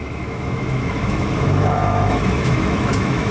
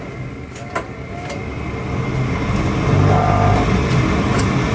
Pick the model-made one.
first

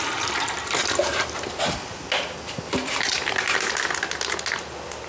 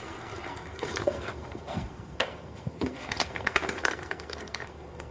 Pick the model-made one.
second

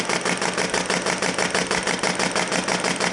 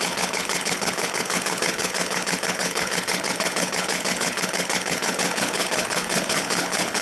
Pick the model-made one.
second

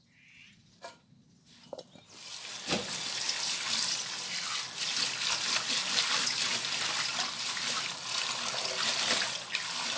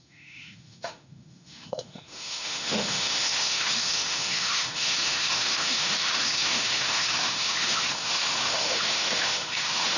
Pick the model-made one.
second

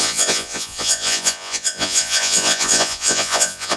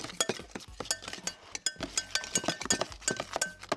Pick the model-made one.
first